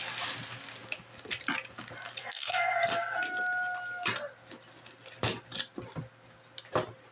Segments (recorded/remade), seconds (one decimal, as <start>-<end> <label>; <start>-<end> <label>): 0.0-2.2 recorded; 2.2-2.9 remade; 2.9-7.1 recorded